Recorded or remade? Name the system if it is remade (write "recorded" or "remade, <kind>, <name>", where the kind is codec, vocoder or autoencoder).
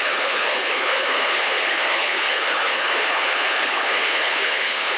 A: remade, codec, HILCodec